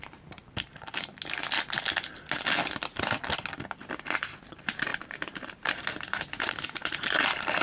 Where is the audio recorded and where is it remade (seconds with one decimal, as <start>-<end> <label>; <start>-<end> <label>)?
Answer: 0.0-1.1 remade; 1.1-4.5 recorded; 4.5-7.6 remade